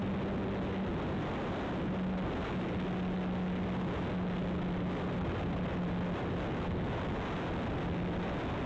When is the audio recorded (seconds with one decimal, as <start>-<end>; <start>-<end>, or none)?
0.0-8.7